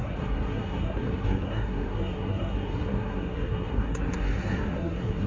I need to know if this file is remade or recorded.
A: remade